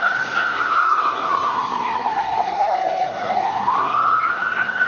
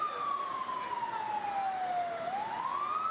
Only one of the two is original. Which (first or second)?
second